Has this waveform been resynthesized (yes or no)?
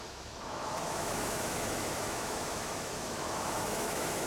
yes